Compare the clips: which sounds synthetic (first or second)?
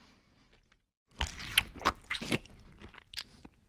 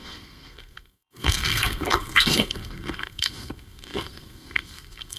second